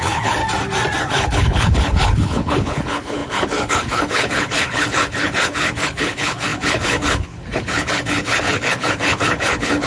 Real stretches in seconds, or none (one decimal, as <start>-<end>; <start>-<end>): 0.4-1.0